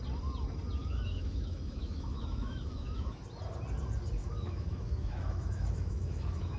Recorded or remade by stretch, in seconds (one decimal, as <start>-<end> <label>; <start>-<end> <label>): 0.0-0.8 recorded; 0.8-3.2 remade; 3.2-4.2 recorded; 4.2-6.6 remade